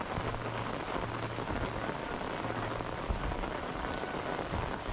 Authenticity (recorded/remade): recorded